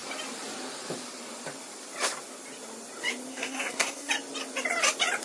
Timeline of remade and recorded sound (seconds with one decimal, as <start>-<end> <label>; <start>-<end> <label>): 0.0-3.3 recorded; 3.3-4.1 remade; 4.1-5.2 recorded